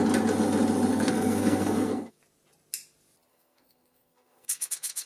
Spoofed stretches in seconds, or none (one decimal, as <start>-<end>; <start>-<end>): 0.9-2.2; 3.3-5.1